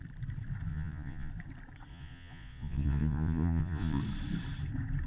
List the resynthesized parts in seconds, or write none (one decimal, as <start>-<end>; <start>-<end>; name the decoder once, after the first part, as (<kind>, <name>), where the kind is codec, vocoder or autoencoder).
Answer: 0.7-1.3 (vocoder, Vocos); 1.9-4.0